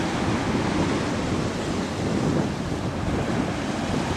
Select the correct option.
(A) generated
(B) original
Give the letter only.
B